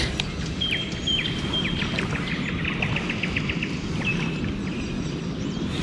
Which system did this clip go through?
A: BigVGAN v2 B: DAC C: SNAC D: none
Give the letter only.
D